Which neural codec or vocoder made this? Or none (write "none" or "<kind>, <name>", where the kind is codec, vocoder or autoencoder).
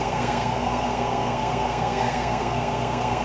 codec, SNAC